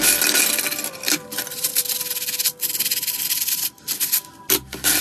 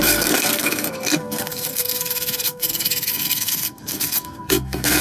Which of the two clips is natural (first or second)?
first